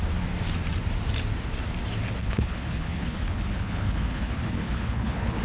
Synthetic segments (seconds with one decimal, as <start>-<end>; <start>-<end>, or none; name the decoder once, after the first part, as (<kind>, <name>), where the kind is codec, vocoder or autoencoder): 2.2-5.4 (codec, HILCodec)